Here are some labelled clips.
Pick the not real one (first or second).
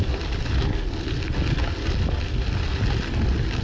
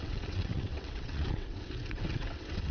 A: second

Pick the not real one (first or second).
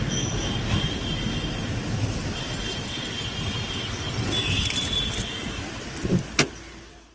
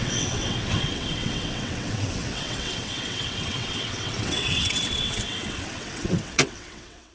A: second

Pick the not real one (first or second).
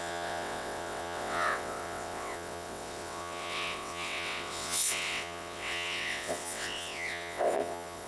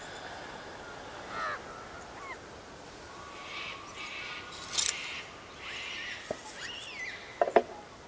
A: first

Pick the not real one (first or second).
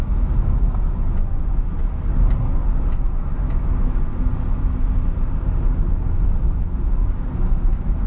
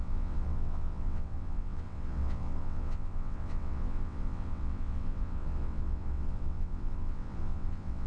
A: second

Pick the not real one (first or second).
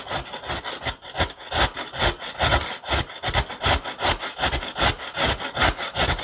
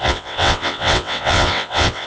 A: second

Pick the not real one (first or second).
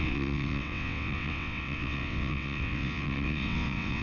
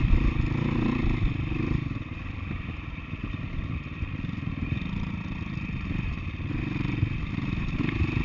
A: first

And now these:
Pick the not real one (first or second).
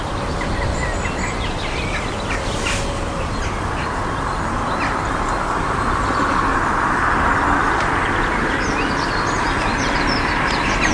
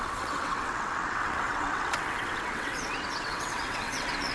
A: second